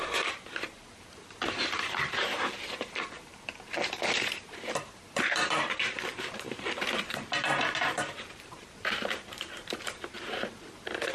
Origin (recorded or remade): remade